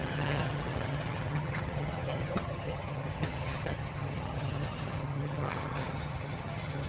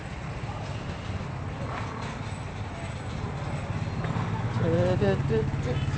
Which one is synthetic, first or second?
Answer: first